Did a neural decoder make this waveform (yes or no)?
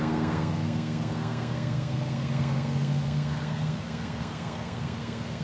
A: yes